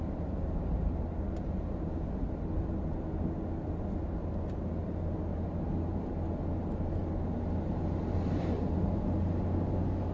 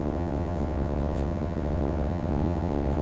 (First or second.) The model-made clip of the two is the second